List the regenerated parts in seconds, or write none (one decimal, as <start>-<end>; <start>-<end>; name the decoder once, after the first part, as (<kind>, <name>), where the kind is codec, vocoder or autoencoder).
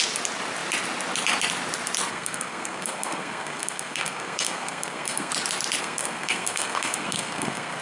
2.1-5.3 (codec, SNAC); 5.8-7.8